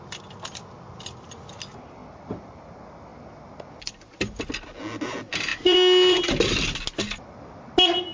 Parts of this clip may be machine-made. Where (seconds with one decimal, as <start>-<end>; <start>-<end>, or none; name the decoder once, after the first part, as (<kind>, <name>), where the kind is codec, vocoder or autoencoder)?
none